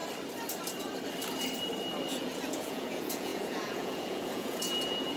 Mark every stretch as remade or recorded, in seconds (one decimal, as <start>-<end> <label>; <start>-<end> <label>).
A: 0.0-2.1 recorded; 2.1-5.2 remade